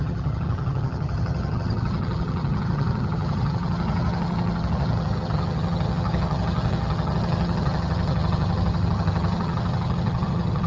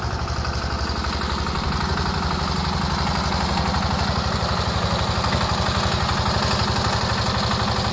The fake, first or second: first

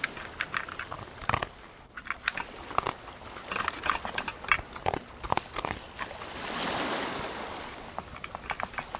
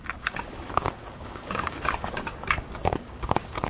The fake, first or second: second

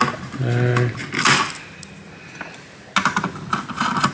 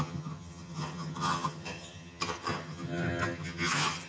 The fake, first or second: second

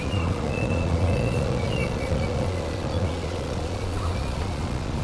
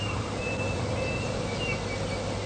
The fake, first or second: first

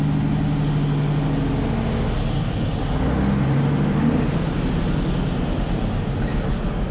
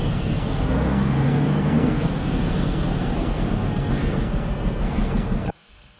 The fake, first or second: second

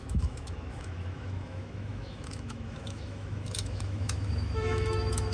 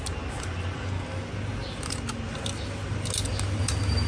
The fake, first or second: first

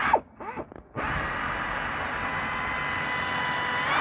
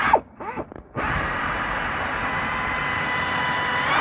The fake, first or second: second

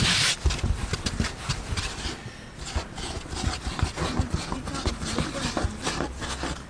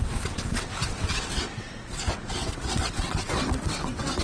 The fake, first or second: second